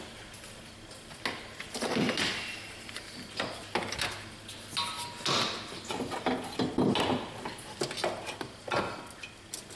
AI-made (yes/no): no